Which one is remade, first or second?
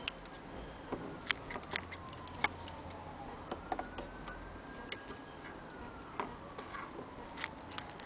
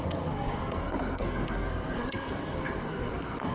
second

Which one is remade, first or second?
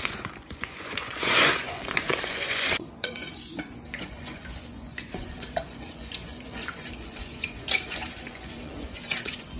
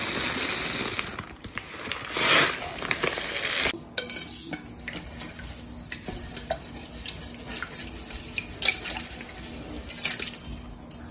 first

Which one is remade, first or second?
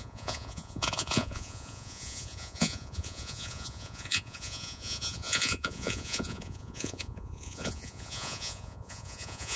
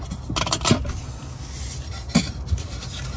first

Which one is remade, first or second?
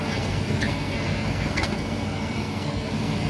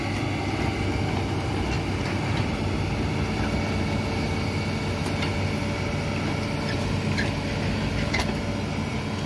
first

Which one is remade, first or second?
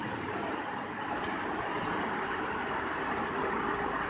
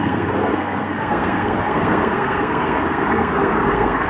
second